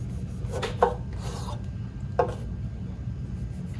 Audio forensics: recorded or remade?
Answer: recorded